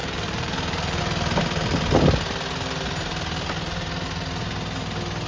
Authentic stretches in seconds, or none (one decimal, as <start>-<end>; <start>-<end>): 1.0-5.3